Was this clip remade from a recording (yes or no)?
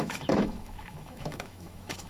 yes